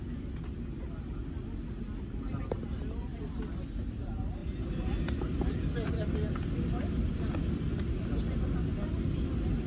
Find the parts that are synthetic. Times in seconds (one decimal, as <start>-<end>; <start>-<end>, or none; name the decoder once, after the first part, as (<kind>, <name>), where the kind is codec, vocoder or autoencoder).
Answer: none